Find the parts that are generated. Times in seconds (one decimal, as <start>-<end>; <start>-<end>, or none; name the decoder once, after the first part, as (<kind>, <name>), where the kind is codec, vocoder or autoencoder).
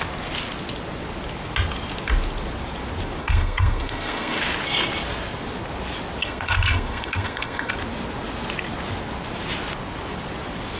3.2-4.4 (codec, SNAC); 6.2-7.7